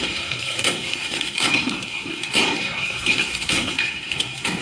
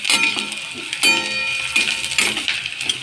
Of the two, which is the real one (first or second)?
second